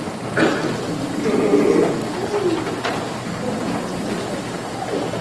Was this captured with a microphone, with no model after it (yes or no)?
yes